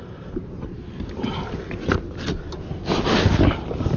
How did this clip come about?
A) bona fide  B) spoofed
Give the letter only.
A